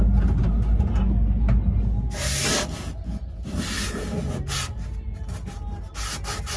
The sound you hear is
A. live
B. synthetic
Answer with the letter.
A